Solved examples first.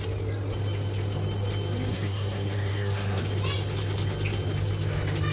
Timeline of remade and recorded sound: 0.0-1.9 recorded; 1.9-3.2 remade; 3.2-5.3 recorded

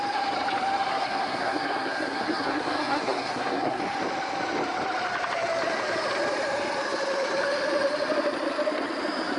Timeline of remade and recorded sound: 0.0-0.9 recorded; 0.9-3.8 remade; 3.8-9.4 recorded

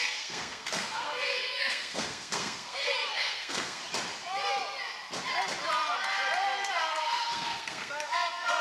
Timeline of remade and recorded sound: 0.0-3.8 remade; 3.8-6.7 recorded; 6.7-8.6 remade

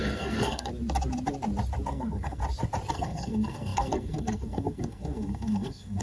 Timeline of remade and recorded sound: 0.0-0.7 remade; 0.7-1.9 recorded; 1.9-2.4 remade; 2.4-2.9 recorded; 2.9-6.0 remade

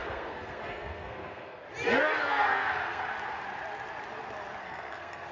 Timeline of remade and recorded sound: 0.0-1.6 remade; 1.6-2.2 recorded; 2.2-3.1 remade; 3.1-4.6 recorded; 4.6-5.3 remade